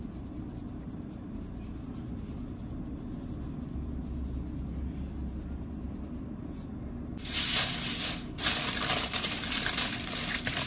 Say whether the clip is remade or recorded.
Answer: recorded